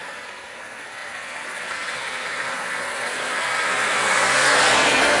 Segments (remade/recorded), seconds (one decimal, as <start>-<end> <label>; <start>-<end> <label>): 0.0-5.2 remade